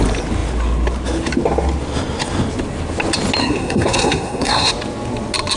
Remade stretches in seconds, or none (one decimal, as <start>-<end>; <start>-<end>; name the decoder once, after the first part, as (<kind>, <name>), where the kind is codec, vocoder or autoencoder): 3.4-4.7 (codec, SNAC)